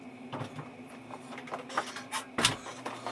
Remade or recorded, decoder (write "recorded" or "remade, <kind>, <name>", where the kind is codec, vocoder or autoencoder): recorded